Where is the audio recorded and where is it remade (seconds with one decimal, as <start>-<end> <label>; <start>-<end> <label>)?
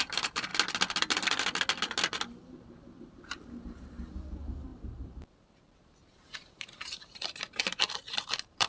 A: 0.0-0.5 remade; 0.5-3.0 recorded; 3.0-8.7 remade